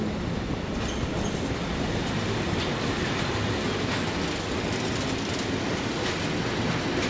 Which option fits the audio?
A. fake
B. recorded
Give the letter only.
B